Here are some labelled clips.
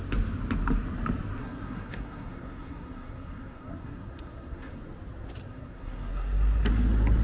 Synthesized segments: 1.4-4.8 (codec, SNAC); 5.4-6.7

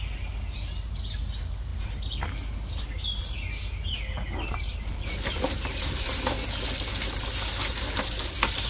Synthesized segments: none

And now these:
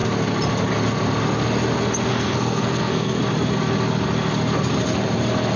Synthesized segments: 2.1-3.2 (codec, SNAC)